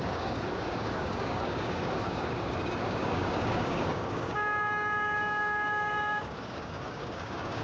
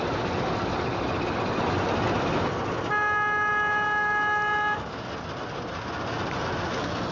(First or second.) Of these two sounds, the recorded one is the second